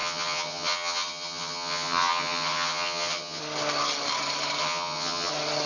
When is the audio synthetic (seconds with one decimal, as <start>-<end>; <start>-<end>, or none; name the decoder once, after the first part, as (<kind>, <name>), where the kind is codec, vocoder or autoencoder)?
0.0-3.4 (vocoder, HiFi-GAN); 4.6-5.3